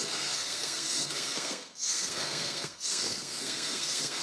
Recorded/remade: remade